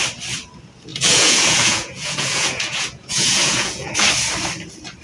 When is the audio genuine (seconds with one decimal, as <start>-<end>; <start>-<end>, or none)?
0.0-0.9; 3.9-5.0